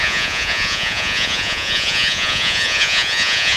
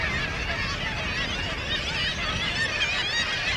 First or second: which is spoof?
first